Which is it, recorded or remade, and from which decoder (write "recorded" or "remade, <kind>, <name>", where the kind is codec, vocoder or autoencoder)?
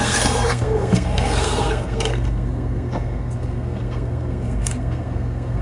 remade, codec, SNAC